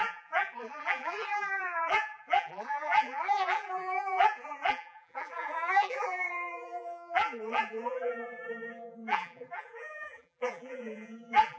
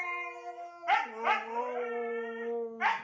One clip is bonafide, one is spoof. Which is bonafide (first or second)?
second